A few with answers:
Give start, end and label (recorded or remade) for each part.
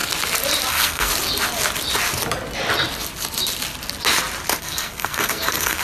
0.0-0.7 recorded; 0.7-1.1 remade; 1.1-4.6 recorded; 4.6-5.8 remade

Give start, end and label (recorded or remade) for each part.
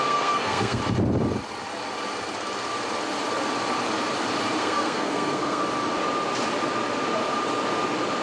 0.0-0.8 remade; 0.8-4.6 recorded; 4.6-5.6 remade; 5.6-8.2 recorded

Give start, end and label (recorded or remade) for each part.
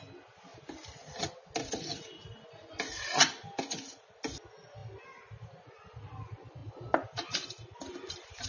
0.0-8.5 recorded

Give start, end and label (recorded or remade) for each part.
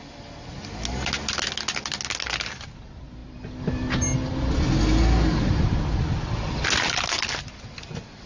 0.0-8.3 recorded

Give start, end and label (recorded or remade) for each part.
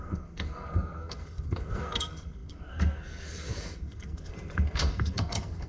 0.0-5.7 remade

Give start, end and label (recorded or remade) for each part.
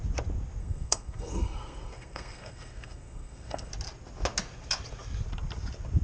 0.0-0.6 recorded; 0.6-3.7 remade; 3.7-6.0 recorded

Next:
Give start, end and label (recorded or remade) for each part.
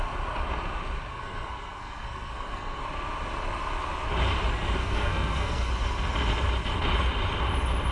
0.0-1.1 recorded; 1.1-2.8 remade; 2.8-4.8 recorded; 4.8-5.7 remade; 5.7-7.9 recorded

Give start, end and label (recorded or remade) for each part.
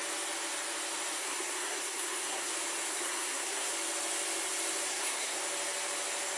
0.0-1.2 recorded; 1.2-2.5 remade; 2.5-2.9 recorded; 2.9-3.7 remade; 3.7-4.9 recorded; 4.9-5.4 remade; 5.4-6.4 recorded